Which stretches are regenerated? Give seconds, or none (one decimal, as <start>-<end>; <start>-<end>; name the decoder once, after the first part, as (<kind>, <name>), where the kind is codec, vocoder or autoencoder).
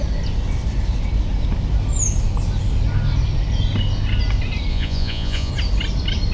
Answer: 4.7-5.5 (vocoder, Vocos)